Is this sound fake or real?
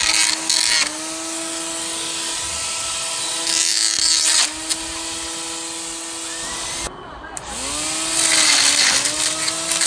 real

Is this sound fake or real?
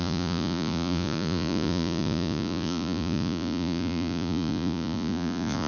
fake